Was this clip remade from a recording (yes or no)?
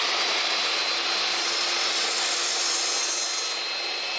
no